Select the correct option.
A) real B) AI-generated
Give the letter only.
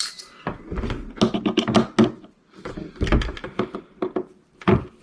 A